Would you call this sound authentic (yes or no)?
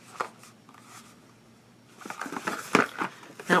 yes